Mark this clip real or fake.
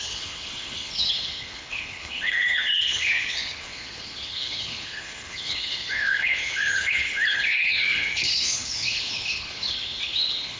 fake